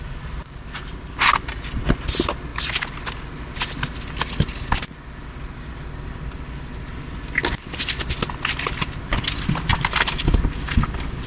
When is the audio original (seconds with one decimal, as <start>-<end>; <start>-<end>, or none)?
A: 0.0-11.3